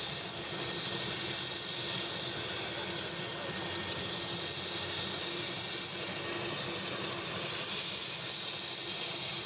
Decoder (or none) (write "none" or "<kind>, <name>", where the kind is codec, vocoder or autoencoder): none